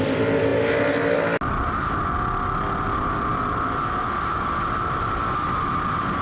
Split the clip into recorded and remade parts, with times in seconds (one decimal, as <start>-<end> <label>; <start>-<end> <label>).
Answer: 0.0-6.2 recorded